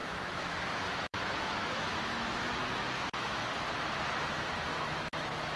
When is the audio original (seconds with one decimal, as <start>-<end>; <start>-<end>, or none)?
3.4-4.7